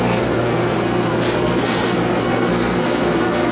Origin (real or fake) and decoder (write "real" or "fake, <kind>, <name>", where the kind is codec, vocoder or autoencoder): fake, codec, SNAC